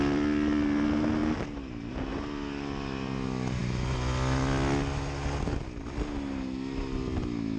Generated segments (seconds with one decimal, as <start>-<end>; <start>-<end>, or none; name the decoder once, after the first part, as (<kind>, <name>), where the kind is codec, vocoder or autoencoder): none